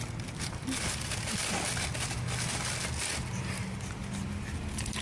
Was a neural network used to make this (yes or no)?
no